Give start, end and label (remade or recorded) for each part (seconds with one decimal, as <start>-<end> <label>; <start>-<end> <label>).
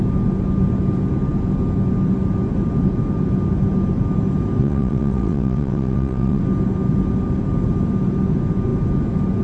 0.0-4.6 recorded; 4.6-6.4 remade; 6.4-9.4 recorded